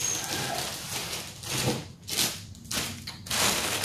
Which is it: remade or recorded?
recorded